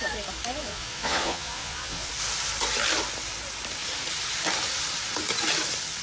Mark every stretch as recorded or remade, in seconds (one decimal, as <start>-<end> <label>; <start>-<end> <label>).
0.0-0.6 recorded; 0.6-2.1 remade; 2.1-6.0 recorded